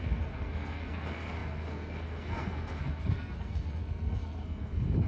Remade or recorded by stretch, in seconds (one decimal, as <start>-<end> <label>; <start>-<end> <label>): 0.0-5.1 remade